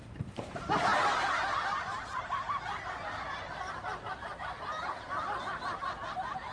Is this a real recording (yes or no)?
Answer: yes